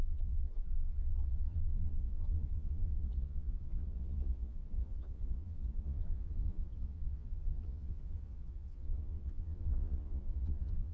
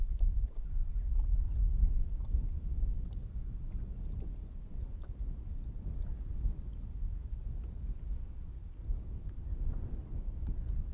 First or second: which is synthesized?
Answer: first